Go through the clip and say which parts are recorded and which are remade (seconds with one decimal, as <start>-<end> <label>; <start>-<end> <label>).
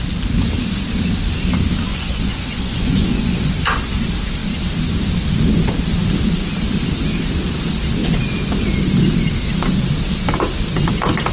0.0-1.9 recorded; 1.9-3.5 remade; 3.5-11.3 recorded